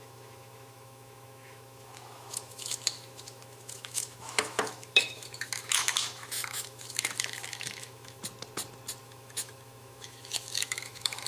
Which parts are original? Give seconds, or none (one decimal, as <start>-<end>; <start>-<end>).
8.2-9.0